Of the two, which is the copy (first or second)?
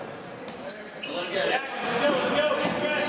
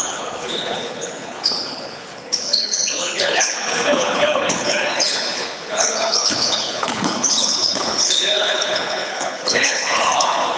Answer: second